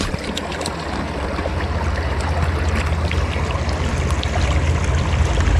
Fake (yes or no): no